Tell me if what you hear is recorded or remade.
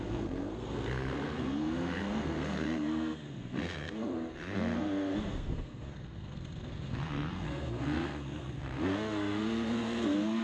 remade